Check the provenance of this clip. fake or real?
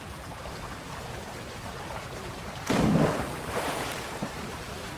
fake